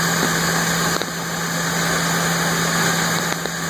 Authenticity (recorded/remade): recorded